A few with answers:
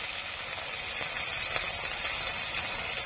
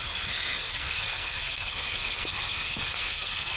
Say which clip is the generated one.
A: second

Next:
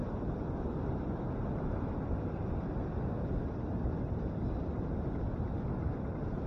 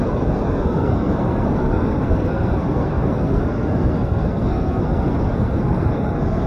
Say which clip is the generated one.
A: second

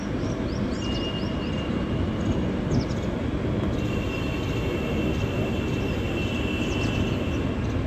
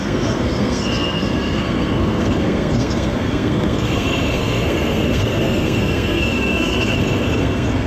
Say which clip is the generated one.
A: second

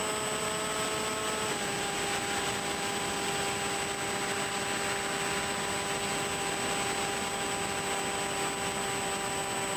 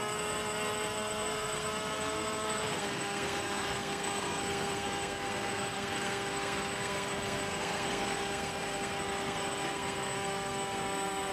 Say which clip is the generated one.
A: second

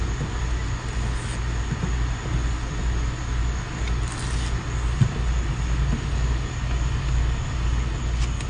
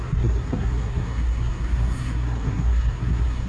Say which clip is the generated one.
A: second